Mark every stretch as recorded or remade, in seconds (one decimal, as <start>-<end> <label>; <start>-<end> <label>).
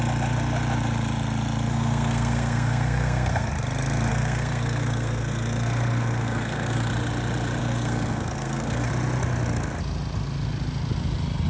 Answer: 0.0-1.7 recorded; 1.7-3.5 remade; 3.5-4.1 recorded; 4.1-6.9 remade; 6.9-7.6 recorded; 7.6-8.9 remade; 8.9-11.5 recorded